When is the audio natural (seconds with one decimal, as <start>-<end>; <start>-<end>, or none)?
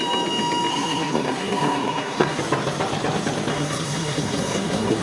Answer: 0.0-0.7; 2.4-3.5